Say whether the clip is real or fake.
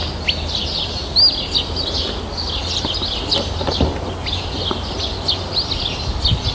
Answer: real